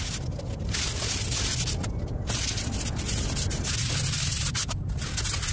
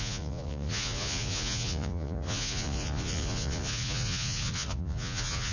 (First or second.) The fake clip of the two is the second